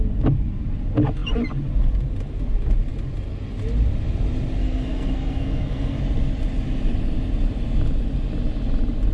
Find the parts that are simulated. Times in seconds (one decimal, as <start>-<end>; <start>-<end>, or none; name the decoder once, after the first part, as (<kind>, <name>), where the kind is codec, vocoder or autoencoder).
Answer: 4.6-6.0 (codec, SNAC)

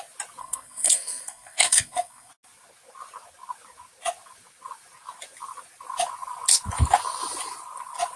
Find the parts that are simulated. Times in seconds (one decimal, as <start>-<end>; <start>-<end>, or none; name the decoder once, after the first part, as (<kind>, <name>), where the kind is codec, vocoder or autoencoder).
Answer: 0.4-2.3 (codec, SNAC)

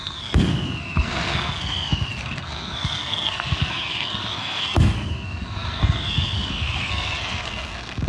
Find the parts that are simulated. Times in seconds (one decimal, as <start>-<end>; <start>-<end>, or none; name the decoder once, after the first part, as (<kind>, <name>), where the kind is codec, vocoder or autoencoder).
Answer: 0.0-8.1 (codec, SNAC)

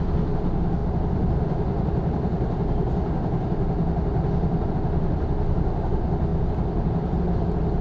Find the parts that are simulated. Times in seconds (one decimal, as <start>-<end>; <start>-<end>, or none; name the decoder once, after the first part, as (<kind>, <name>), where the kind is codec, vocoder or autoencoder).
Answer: none

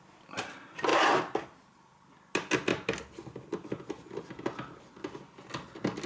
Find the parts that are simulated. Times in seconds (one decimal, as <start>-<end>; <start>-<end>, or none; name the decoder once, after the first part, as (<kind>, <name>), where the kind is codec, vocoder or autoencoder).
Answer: none